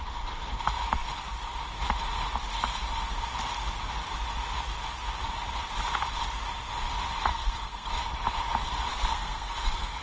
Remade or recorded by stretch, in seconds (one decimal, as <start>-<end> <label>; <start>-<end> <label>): 0.0-7.3 recorded; 7.3-7.9 remade; 7.9-8.9 recorded; 8.9-10.0 remade